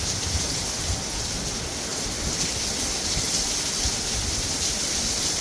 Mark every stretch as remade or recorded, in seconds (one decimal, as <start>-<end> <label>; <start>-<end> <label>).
0.0-5.4 recorded